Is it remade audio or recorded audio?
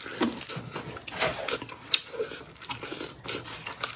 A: recorded